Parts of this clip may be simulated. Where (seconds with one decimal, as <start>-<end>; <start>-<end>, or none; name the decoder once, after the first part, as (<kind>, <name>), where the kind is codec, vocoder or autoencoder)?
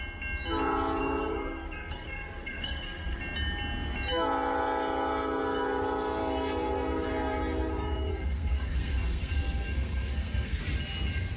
1.0-3.2 (codec, SNAC); 8.1-10.6